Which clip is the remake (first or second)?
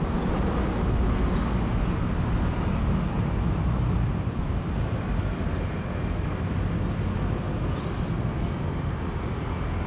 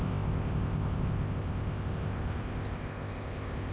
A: second